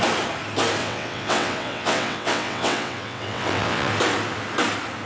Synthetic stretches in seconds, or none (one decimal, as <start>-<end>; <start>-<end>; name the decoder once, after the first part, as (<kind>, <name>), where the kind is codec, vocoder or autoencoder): 0.8-3.9 (vocoder, WaveNeXt)